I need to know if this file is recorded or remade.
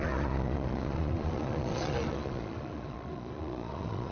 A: remade